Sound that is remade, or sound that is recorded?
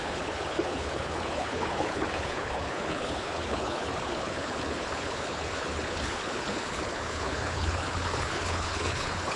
remade